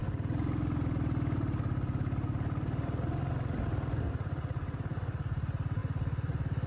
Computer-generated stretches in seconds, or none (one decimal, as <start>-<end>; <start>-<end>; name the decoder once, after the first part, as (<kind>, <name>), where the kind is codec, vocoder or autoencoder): none

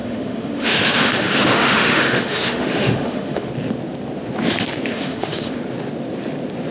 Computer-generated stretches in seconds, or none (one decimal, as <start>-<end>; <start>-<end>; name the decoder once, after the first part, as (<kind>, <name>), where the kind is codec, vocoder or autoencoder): 0.0-3.5 (autoencoder, DAC-VAE); 4.9-5.6

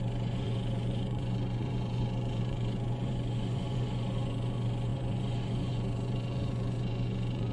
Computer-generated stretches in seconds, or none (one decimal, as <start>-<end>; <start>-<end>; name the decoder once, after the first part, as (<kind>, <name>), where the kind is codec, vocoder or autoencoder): 0.0-7.5 (vocoder, Vocos)